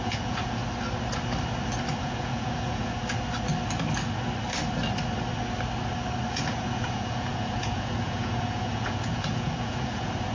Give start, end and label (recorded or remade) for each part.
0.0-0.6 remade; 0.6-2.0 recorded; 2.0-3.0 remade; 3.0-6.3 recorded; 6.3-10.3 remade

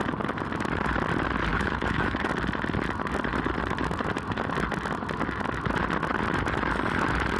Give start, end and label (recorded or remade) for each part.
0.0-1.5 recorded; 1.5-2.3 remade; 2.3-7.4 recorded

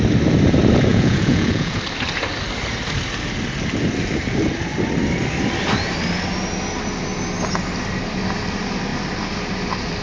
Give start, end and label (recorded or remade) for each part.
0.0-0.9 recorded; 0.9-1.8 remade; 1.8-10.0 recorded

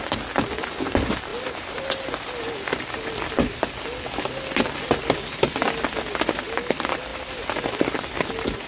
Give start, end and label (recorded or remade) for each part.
0.0-8.7 recorded

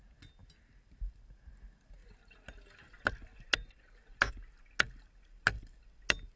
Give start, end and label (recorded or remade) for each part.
0.0-6.4 recorded